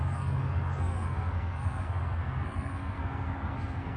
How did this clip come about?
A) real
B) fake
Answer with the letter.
B